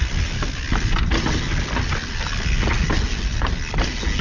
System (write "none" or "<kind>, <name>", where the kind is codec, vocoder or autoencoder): none